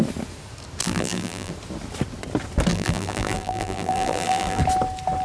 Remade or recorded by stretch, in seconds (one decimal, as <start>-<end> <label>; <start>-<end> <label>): 0.0-0.8 recorded; 0.8-1.5 remade; 1.5-2.7 recorded; 2.7-4.6 remade; 4.6-5.2 recorded